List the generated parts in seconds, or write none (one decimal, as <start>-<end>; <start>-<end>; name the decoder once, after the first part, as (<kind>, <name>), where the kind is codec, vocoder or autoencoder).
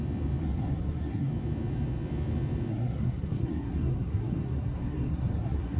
0.4-1.3 (codec, SNAC); 2.7-5.8